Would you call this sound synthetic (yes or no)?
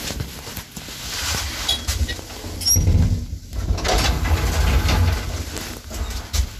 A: no